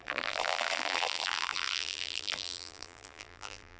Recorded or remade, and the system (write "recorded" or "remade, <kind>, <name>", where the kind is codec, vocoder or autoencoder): remade, vocoder, BigVGAN v2